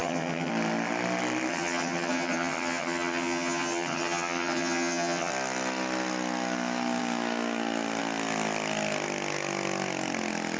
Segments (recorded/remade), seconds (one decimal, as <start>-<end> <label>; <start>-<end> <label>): 0.0-0.5 remade; 0.5-1.5 recorded; 1.5-5.3 remade; 5.3-10.6 recorded